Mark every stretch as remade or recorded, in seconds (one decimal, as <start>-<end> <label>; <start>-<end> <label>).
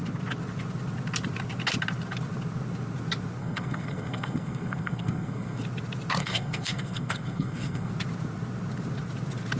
0.0-3.4 recorded; 3.4-5.6 remade; 5.6-6.2 recorded; 6.2-7.9 remade; 7.9-9.6 recorded